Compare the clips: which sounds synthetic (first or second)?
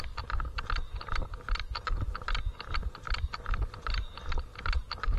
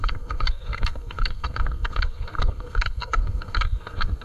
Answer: second